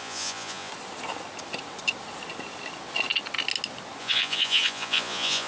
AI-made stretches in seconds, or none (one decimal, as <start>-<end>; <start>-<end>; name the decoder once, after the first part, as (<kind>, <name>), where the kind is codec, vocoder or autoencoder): 0.0-0.7 (vocoder, Vocos); 4.0-5.5